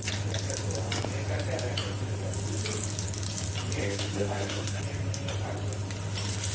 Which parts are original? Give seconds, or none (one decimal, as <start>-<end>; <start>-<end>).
0.0-3.8; 4.8-6.5